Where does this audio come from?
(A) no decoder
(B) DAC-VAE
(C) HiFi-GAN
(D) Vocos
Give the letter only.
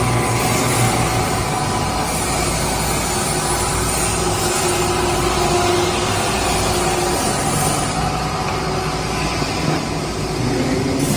A